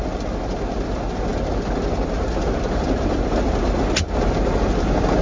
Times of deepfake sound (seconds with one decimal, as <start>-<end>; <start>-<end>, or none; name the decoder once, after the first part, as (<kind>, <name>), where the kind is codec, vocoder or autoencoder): none